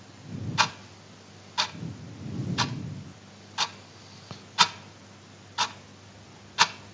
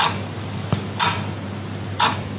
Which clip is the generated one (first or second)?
second